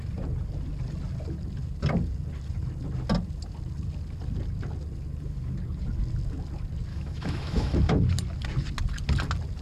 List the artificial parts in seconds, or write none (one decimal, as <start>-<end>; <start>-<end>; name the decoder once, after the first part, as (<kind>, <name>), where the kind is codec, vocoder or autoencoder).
6.9-7.8 (autoencoder, DAC-VAE)